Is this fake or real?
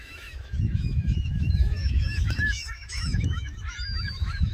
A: fake